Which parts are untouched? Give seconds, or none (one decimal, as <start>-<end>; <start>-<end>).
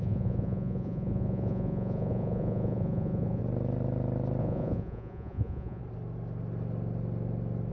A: 3.4-4.4; 5.8-7.7